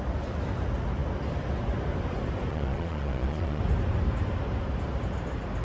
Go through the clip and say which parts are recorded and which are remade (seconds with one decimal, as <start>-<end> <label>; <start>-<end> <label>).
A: 0.0-2.5 recorded; 2.5-3.6 remade; 3.6-5.6 recorded